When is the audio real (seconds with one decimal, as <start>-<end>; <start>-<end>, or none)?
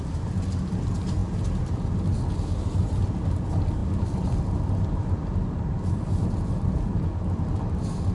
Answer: 0.0-8.1